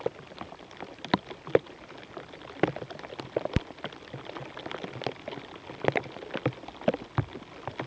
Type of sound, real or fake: real